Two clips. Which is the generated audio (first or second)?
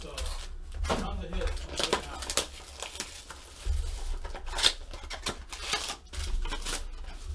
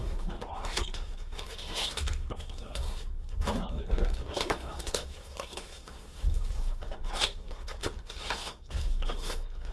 second